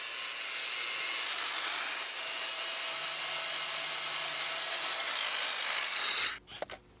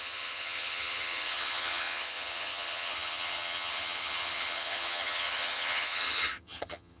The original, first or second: first